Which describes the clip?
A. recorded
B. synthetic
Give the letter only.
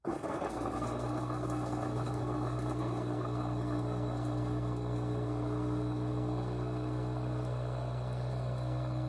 B